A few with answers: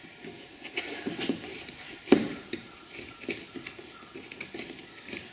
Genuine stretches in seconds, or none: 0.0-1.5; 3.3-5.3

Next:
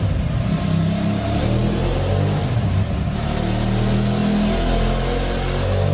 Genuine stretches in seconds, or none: 0.0-5.9

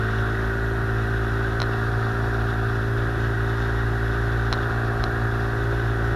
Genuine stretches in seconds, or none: 0.0-6.2

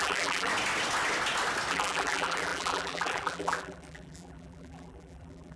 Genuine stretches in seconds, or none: 0.5-1.7

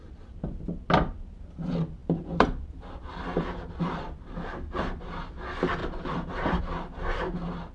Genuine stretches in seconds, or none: 0.0-2.0; 3.8-5.8; 6.6-7.7

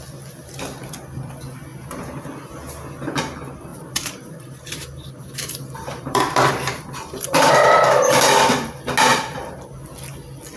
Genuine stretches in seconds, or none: 0.0-3.7; 7.5-9.1; 9.7-10.6